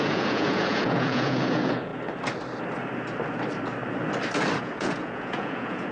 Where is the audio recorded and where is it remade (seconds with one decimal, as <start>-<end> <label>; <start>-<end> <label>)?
0.0-1.9 remade; 1.9-4.6 recorded; 4.6-5.9 remade